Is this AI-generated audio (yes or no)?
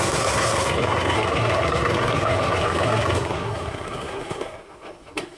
yes